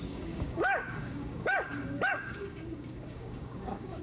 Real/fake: fake